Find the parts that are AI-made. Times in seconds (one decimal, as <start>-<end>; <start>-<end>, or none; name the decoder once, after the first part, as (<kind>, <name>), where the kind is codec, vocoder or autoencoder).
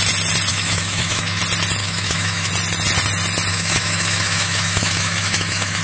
0.5-1.4 (autoencoder, DAC-VAE); 1.8-2.5; 3.5-5.8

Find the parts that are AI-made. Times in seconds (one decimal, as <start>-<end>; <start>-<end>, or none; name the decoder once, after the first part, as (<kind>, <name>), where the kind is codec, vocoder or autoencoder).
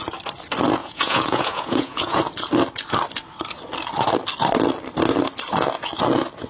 0.8-2.2 (vocoder, Vocos)